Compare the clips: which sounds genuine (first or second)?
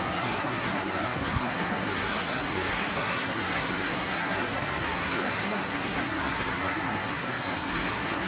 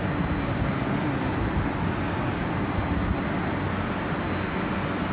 second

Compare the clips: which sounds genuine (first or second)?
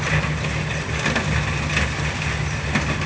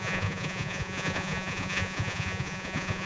first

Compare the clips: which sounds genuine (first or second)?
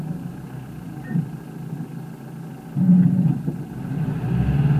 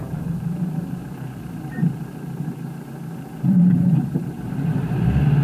first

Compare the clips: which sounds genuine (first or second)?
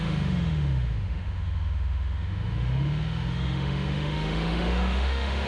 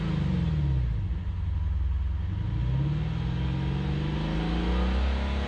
second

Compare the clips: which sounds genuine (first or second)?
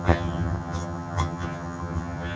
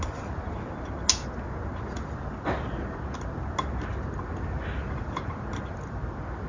second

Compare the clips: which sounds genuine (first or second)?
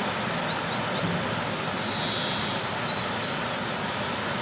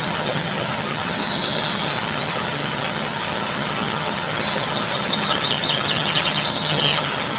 first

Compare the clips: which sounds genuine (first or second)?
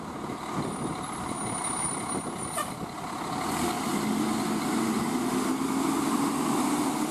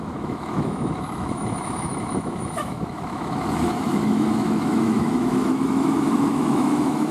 first